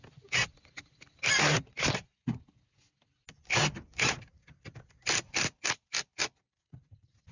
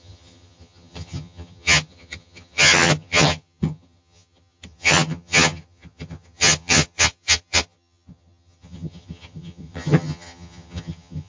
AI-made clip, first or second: second